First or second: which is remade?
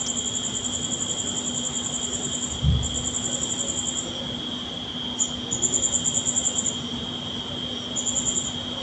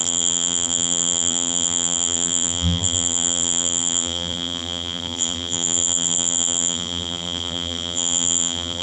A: second